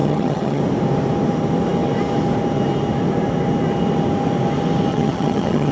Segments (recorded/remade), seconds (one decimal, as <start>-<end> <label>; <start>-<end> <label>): 0.0-0.6 remade; 0.6-4.9 recorded; 4.9-5.7 remade

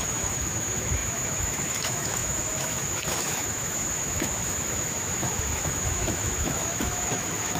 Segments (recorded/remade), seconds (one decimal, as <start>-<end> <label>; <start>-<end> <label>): 0.0-7.6 remade

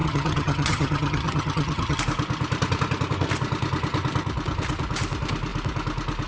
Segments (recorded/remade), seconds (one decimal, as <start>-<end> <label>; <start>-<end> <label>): 0.0-2.0 remade; 2.0-6.3 recorded

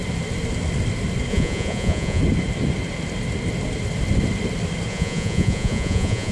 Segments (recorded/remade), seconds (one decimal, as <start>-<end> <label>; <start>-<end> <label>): 0.0-1.3 recorded; 1.3-2.2 remade; 2.2-4.9 recorded; 4.9-6.3 remade

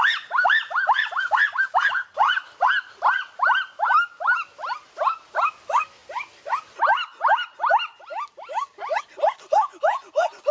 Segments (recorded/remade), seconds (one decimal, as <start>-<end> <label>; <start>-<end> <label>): 0.0-4.6 recorded; 4.6-5.6 remade; 5.6-10.5 recorded